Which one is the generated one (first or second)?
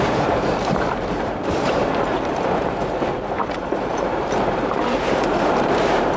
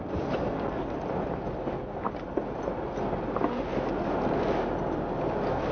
first